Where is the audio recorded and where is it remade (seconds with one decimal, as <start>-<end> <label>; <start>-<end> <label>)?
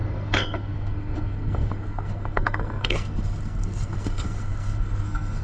0.0-5.4 remade